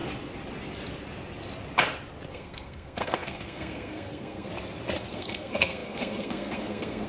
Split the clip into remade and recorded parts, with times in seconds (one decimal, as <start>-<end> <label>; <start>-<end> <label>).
0.0-2.3 recorded; 2.3-4.5 remade; 4.5-5.1 recorded; 5.1-7.1 remade